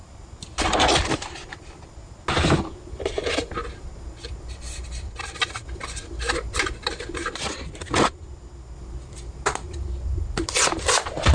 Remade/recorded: recorded